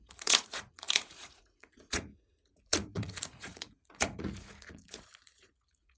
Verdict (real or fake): fake